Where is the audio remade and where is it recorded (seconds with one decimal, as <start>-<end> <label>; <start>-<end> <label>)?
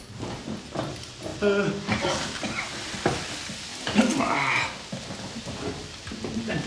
0.0-6.7 recorded